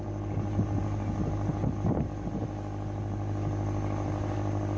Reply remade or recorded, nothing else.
recorded